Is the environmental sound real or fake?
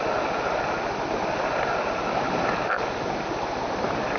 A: real